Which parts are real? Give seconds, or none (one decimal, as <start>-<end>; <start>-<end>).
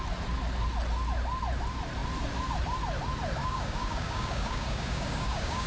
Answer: 0.0-3.4